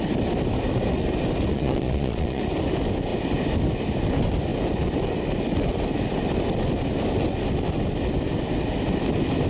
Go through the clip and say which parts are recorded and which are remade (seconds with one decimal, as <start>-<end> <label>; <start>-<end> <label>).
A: 0.0-1.5 recorded; 1.5-2.4 remade; 2.4-9.5 recorded